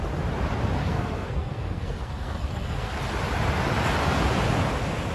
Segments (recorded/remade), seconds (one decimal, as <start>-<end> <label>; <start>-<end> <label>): 0.0-0.8 recorded; 0.8-2.9 remade; 2.9-5.1 recorded